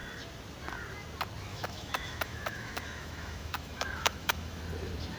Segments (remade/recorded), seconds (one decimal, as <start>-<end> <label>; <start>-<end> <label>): 0.0-1.5 recorded; 1.5-4.6 remade; 4.6-5.2 recorded